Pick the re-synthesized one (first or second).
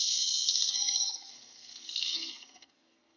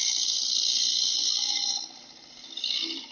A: first